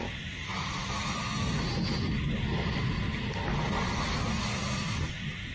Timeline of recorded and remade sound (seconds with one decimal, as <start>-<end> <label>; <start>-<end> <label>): 0.0-5.5 recorded